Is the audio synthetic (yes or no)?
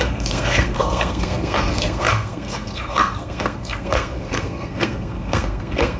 yes